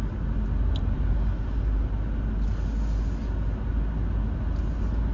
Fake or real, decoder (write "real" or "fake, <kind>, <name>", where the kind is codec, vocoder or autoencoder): real